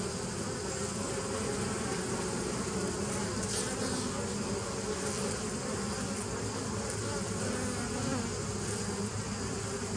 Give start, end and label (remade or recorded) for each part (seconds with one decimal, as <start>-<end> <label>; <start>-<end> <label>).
0.0-8.1 recorded; 8.1-8.8 remade; 8.8-10.0 recorded